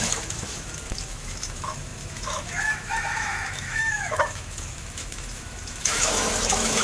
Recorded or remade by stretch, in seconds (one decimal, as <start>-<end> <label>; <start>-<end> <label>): 0.0-6.8 remade